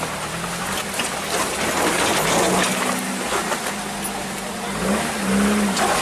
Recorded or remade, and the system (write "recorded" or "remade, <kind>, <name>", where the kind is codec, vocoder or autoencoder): recorded